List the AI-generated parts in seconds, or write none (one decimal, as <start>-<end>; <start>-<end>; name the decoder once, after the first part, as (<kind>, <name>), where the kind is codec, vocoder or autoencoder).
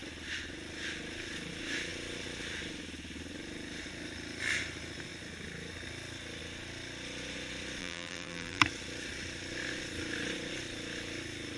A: 7.8-8.6 (vocoder, BigVGAN v2)